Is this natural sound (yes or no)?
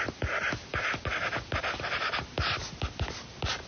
yes